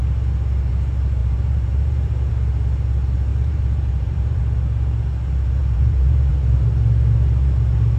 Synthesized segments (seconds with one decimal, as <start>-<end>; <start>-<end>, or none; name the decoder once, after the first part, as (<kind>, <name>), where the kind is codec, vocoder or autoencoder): 1.2-2.3 (vocoder, BigVGAN v2); 3.3-4.4; 5.6-6.3